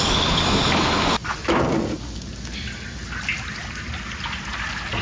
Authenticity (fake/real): real